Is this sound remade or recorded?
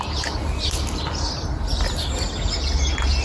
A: recorded